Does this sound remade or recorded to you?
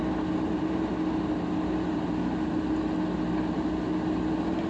recorded